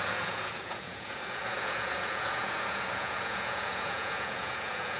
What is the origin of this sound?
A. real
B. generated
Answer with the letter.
B